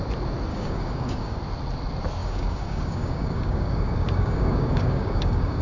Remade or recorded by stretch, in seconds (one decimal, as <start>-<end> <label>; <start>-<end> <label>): 0.0-0.5 recorded; 0.5-1.4 remade; 1.4-2.2 recorded; 2.2-5.6 remade